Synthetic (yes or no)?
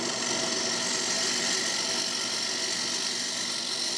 no